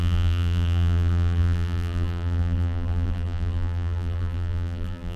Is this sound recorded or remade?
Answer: remade